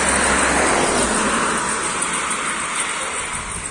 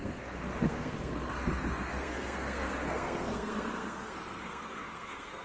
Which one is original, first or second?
first